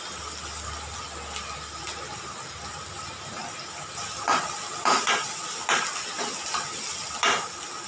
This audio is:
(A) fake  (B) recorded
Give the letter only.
B